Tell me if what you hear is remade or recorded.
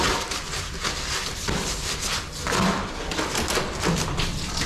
recorded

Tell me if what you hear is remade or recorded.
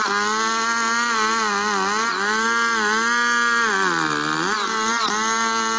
recorded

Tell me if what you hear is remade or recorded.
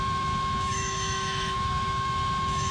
remade